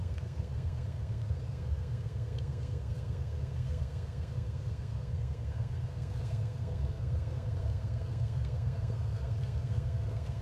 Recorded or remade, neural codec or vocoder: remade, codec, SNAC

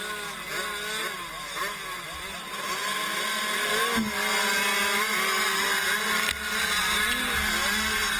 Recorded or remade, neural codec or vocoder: recorded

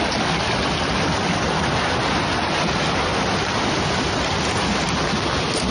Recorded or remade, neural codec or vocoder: recorded